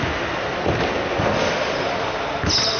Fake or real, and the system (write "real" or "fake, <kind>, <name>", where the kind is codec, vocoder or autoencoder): real